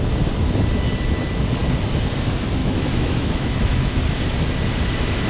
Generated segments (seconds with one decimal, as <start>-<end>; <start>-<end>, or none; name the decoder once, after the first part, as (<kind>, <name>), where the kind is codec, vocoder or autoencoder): 2.6-4.2 (autoencoder, DAC-VAE)